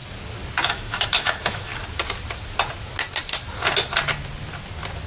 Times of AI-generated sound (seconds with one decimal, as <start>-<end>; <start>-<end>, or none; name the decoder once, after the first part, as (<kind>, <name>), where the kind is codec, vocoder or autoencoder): 0.7-1.7 (autoencoder, DAC-VAE)